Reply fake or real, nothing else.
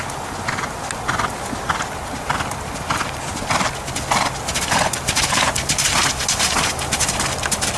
real